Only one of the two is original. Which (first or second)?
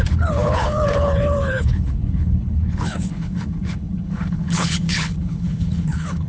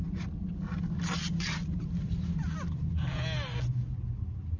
second